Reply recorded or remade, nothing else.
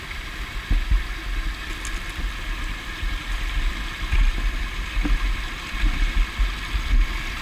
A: recorded